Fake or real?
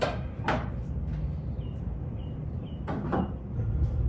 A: fake